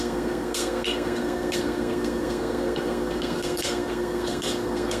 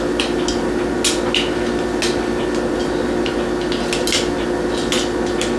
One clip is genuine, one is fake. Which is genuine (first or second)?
second